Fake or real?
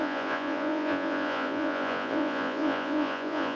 fake